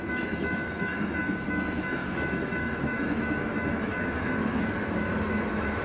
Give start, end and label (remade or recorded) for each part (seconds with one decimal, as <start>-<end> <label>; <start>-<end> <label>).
0.0-5.8 remade